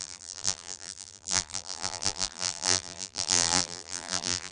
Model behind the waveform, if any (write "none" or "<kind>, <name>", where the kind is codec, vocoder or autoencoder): vocoder, BigVGAN v2